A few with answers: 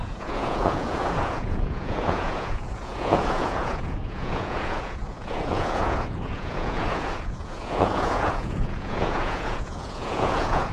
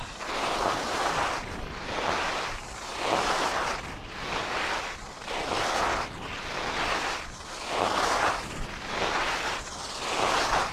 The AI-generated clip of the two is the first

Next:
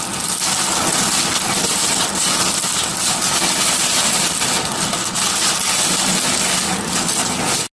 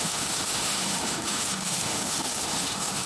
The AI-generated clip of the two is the second